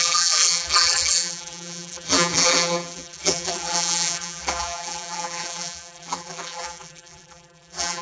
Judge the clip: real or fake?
fake